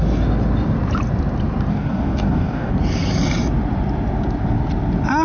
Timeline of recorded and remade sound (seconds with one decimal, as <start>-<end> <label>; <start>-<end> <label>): 0.0-1.7 recorded; 1.7-2.7 remade; 2.7-5.2 recorded